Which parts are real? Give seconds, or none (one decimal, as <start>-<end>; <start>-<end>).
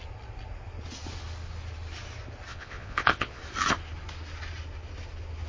0.0-2.5; 3.4-5.5